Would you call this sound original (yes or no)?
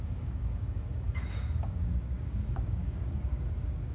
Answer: no